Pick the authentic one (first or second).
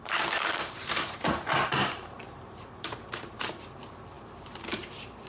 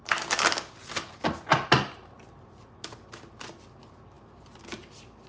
second